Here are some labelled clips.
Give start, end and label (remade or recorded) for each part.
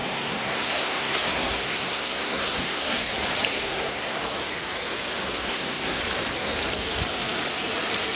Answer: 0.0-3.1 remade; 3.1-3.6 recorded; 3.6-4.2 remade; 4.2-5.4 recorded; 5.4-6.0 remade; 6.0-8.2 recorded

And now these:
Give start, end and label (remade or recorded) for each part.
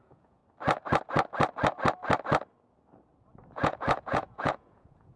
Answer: 0.0-0.4 remade; 0.4-3.5 recorded; 3.5-5.2 remade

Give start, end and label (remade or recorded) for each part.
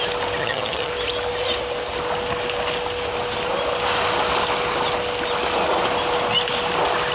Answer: 0.0-0.4 recorded; 0.4-0.9 remade; 0.9-7.1 recorded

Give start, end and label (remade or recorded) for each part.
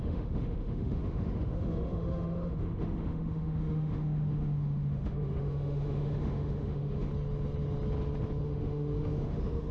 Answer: 0.0-7.1 remade; 7.1-8.4 recorded; 8.4-9.7 remade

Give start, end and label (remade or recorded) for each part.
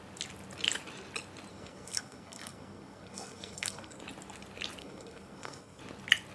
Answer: 0.0-1.5 recorded; 1.5-4.0 remade; 4.0-4.8 recorded; 4.8-5.8 remade; 5.8-6.3 recorded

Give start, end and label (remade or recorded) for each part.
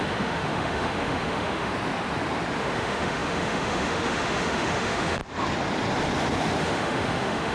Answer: 0.0-1.7 remade; 1.7-2.6 recorded; 2.6-5.2 remade; 5.2-6.6 recorded; 6.6-7.5 remade